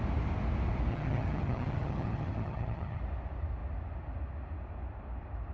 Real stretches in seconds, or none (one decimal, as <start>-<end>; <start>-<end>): 0.0-0.9; 3.0-5.5